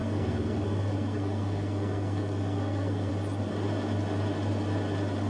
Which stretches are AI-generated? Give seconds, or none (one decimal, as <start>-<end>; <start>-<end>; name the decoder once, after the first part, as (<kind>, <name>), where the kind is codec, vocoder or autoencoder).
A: 0.0-3.1 (codec, SNAC)